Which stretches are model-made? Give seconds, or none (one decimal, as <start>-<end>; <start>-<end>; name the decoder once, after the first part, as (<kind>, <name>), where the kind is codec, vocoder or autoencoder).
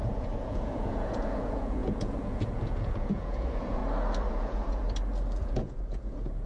0.0-3.8 (vocoder, Vocos); 4.3-4.8; 5.4-6.5